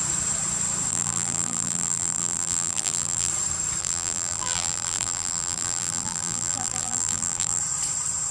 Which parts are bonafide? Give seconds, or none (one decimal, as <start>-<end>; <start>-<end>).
0.0-0.9; 3.3-3.8; 7.6-8.3